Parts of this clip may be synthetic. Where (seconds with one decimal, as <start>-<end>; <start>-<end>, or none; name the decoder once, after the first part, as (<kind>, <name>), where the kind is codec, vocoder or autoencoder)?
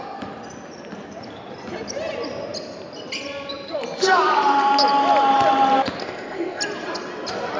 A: 6.0-6.6 (codec, ZipCodec)